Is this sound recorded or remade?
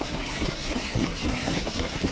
remade